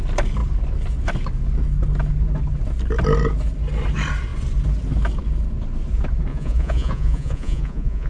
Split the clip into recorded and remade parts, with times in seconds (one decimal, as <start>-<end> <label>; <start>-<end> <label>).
0.0-6.3 recorded; 6.3-8.1 remade